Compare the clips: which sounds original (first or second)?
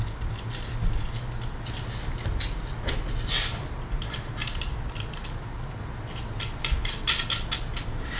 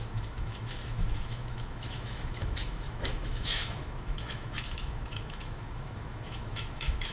first